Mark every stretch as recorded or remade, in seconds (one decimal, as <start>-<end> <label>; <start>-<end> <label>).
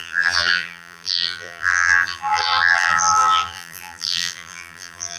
0.0-5.2 remade